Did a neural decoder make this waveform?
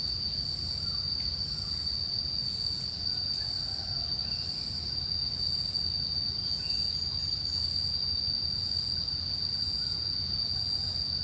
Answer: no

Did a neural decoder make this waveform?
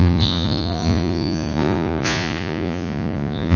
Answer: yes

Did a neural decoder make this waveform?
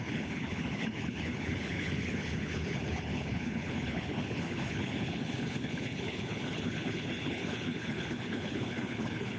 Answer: yes